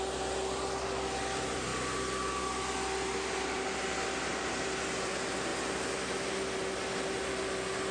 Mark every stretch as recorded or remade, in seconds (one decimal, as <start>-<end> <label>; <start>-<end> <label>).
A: 0.0-7.9 recorded